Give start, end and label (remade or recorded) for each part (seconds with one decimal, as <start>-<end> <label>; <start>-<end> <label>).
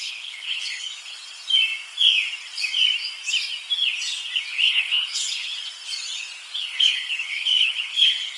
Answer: 0.0-1.2 remade; 1.2-4.5 recorded; 4.5-5.5 remade; 5.5-6.6 recorded; 6.6-8.4 remade